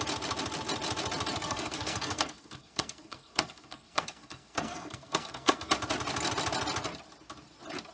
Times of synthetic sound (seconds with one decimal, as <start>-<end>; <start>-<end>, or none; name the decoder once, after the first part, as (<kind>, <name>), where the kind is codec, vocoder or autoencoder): 1.3-5.7 (codec, SNAC)